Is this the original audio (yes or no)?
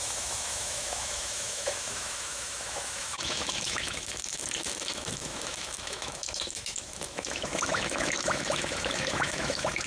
no